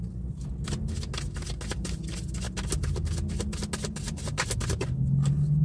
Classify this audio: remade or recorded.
recorded